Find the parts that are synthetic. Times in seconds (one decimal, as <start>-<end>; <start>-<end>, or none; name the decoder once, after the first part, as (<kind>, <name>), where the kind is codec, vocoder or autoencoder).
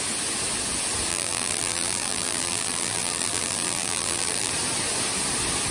1.1-4.5 (vocoder, BigVGAN v2)